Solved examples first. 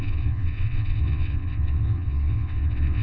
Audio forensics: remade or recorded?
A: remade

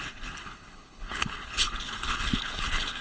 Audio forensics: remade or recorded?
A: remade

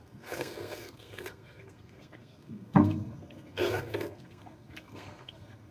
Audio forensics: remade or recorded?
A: remade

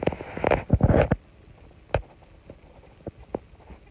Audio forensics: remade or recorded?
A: recorded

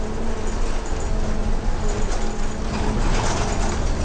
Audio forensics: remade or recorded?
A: recorded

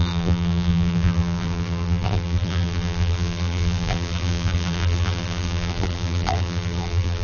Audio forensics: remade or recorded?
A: remade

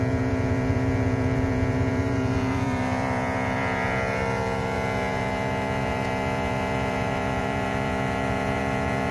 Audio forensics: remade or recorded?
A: remade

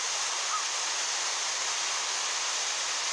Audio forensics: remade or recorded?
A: recorded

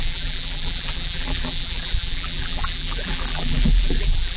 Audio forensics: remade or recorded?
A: remade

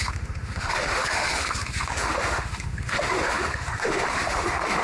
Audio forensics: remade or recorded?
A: remade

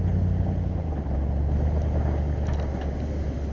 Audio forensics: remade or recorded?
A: recorded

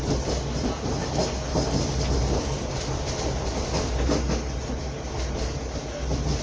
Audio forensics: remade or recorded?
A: recorded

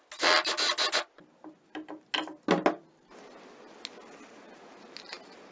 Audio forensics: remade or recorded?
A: recorded